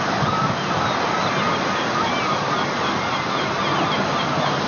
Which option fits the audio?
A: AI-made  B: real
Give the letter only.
B